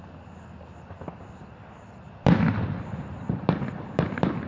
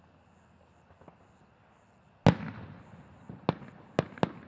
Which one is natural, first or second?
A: second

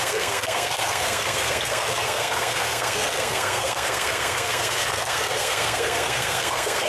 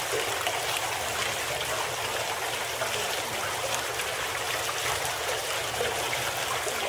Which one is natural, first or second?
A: second